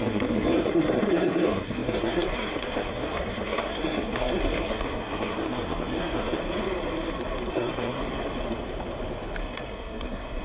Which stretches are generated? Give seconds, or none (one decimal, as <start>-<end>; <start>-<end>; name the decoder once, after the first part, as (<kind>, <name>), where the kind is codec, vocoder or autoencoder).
0.0-6.4 (codec, SNAC); 7.5-8.0; 9.4-10.4